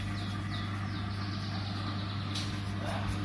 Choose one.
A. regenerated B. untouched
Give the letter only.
B